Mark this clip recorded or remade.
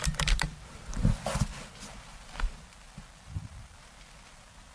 recorded